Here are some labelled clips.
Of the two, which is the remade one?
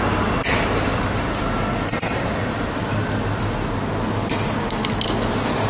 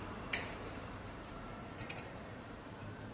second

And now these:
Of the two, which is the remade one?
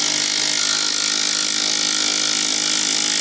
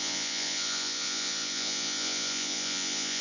second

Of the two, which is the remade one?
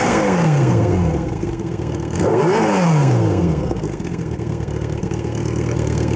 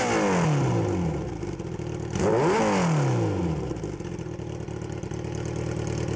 first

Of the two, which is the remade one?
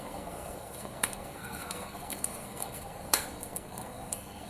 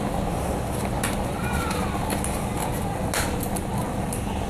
first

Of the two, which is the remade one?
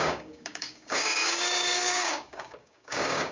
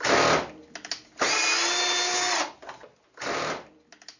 first